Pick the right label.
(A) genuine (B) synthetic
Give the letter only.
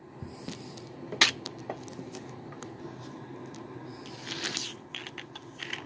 A